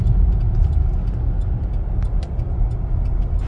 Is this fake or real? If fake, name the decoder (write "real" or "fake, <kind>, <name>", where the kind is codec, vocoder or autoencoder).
real